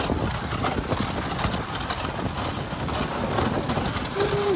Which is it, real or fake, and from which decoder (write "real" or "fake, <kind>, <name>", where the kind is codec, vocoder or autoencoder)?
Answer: real